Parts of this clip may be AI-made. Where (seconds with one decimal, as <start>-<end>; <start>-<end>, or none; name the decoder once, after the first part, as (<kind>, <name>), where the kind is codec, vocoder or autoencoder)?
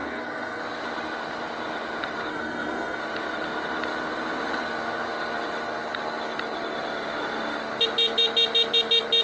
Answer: 0.0-0.6 (codec, SNAC); 2.3-3.0